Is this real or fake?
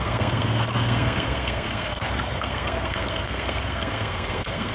fake